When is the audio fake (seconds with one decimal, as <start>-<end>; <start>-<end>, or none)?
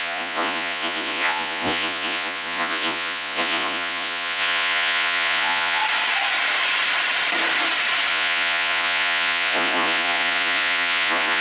0.0-5.8; 8.1-11.4